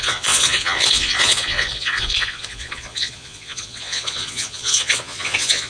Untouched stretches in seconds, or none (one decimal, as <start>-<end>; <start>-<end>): none